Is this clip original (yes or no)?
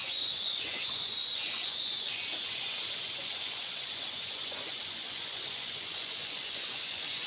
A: no